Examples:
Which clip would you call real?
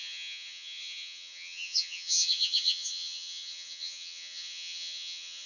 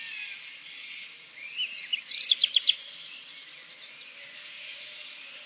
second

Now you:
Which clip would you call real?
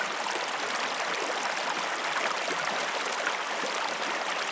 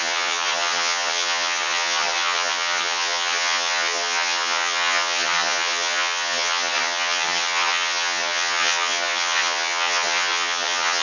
first